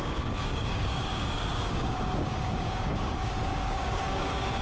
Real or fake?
fake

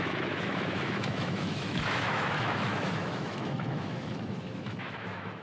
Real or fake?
fake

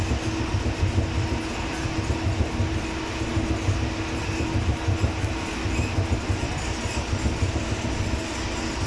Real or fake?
real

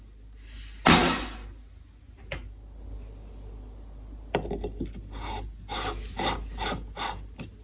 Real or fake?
real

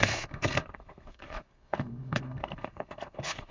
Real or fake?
fake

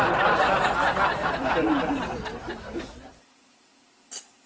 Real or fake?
real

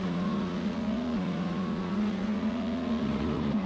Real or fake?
fake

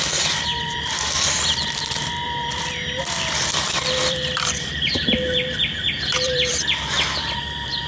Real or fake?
fake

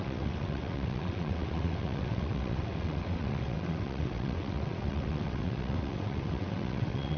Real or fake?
fake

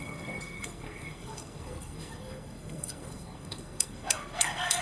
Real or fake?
fake